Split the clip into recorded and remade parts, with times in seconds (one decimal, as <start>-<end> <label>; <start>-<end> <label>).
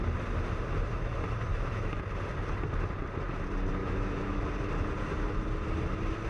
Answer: 0.0-1.5 recorded; 1.5-2.0 remade; 2.0-3.8 recorded; 3.8-4.4 remade; 4.4-6.3 recorded